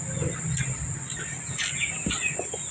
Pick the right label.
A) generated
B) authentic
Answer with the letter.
B